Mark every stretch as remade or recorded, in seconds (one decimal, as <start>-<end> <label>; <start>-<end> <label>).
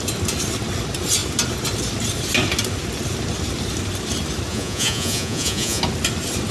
0.0-4.5 recorded; 4.5-5.8 remade; 5.8-6.5 recorded